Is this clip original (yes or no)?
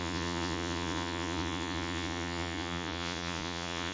no